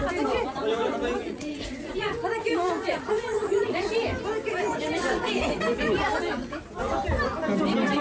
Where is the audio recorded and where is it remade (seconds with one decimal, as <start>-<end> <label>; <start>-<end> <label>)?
0.0-1.2 recorded; 1.2-3.9 remade; 3.9-8.0 recorded